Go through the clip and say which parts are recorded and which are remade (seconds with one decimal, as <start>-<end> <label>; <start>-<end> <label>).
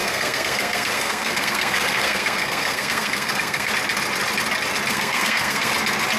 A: 0.0-3.7 remade; 3.7-4.9 recorded; 4.9-5.7 remade; 5.7-6.2 recorded